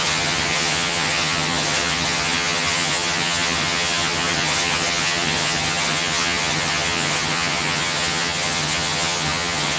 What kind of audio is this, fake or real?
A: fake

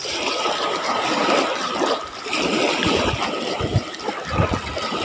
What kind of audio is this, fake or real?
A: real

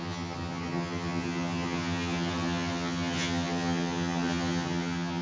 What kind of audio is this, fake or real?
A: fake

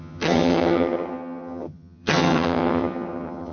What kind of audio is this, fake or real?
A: fake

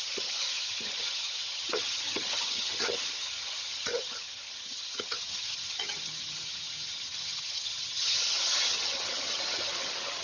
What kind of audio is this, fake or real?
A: fake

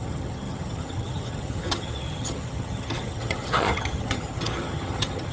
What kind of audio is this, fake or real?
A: fake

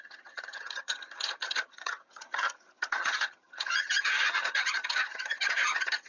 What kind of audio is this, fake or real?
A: fake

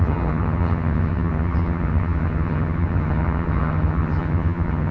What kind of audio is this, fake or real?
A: fake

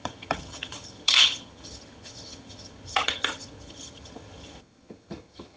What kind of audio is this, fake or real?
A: fake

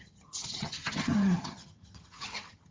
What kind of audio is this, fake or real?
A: fake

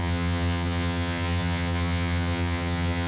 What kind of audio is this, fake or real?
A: fake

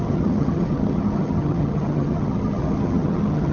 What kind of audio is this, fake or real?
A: fake